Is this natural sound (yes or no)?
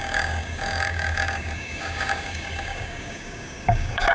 no